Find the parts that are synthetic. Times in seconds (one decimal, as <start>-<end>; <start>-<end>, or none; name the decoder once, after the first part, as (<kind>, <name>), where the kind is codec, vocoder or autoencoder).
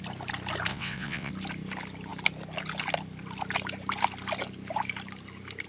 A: 0.7-1.3 (vocoder, WaveNeXt)